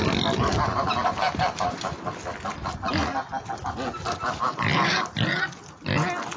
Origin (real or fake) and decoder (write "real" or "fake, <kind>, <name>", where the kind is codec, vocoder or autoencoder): real